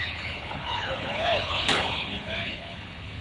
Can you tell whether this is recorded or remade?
remade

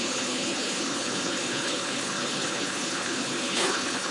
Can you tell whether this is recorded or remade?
remade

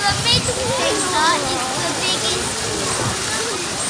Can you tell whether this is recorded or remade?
recorded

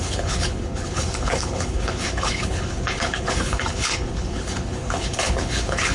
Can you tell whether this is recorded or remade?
remade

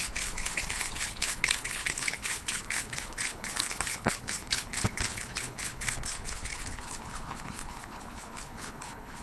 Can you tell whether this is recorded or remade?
remade